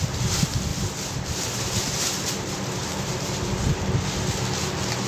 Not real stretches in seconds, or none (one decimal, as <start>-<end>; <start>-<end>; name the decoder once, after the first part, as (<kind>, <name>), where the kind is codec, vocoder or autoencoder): 0.7-3.8 (vocoder, BigVGAN v2)